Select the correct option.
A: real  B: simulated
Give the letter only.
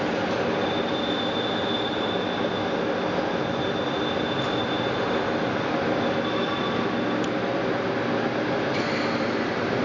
A